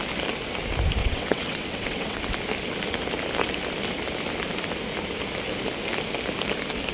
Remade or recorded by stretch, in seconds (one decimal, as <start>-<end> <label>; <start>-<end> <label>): 0.0-1.0 recorded; 1.0-2.2 remade; 2.2-6.9 recorded